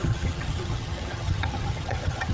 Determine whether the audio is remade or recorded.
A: remade